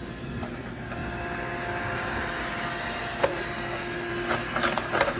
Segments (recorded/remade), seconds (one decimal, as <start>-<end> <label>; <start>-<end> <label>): 0.0-5.2 recorded